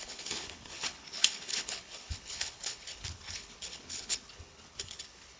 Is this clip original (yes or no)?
no